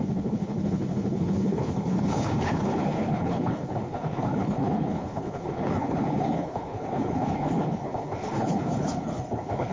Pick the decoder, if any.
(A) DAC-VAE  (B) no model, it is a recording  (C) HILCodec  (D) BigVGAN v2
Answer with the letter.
C